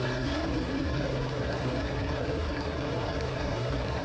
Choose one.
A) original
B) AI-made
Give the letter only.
B